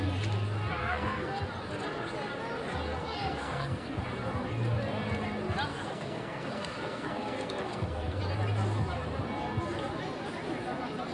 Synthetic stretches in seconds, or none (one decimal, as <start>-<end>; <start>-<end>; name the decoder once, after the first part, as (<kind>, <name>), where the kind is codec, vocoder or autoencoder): 0.8-1.4 (codec, SNAC); 3.0-4.0; 5.7-8.2